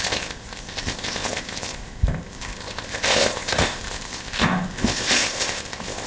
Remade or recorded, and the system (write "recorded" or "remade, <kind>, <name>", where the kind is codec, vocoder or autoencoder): remade, codec, ZipCodec